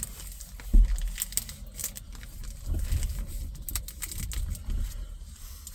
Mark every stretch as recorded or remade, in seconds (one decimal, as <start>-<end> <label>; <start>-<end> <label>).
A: 0.0-5.7 recorded